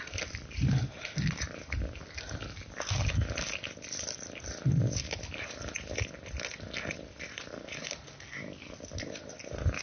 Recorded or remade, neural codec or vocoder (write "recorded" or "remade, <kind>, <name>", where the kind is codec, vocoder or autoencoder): recorded